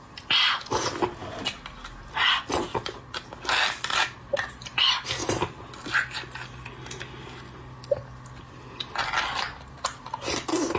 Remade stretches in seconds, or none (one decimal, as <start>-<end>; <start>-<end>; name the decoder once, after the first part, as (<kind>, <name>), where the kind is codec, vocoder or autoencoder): none